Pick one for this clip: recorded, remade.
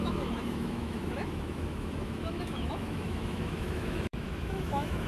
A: remade